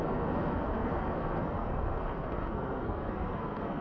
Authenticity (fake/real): fake